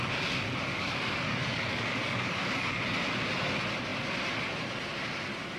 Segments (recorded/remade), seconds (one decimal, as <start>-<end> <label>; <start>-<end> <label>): 0.0-0.7 recorded; 0.7-2.8 remade; 2.8-5.6 recorded